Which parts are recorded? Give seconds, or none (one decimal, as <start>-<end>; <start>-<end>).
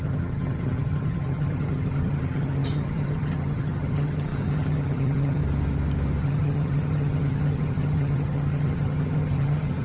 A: 5.4-6.2